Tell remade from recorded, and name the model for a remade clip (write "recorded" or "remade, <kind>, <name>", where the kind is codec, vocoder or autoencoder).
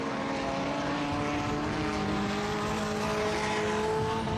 recorded